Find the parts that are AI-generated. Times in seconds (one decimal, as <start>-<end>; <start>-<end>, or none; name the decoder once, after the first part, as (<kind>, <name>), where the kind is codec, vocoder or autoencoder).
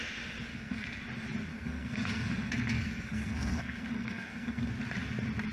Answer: 0.5-1.0 (codec, SNAC); 1.5-4.7